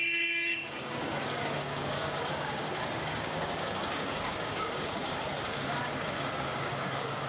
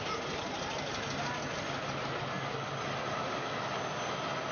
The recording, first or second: second